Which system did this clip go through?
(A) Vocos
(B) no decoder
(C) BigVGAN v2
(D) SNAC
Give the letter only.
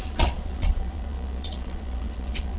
A